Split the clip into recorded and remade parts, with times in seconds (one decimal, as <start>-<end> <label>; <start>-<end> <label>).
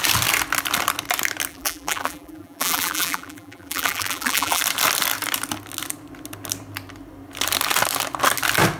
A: 0.0-1.5 recorded; 1.5-4.6 remade; 4.6-8.8 recorded